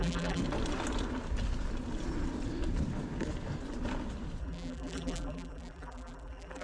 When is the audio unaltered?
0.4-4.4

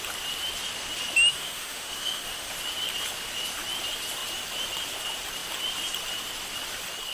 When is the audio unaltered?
0.0-1.3; 2.5-7.1

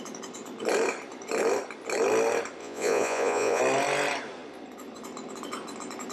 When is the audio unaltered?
0.0-2.6; 3.6-6.1

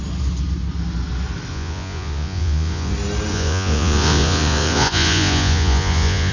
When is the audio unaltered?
0.0-1.5; 2.9-3.3